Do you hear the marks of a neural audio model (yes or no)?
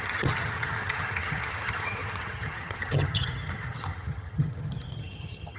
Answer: yes